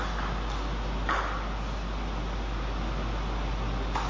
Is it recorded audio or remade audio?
recorded